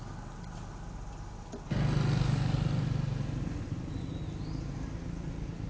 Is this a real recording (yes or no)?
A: yes